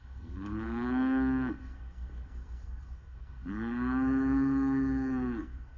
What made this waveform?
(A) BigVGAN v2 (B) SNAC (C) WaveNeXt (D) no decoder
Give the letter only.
B